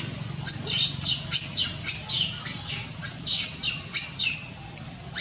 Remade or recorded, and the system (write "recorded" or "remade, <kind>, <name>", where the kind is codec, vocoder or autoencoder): recorded